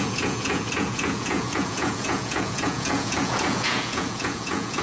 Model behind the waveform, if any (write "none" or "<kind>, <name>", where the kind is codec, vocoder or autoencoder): vocoder, Vocos